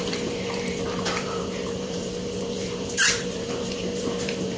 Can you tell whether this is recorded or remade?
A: remade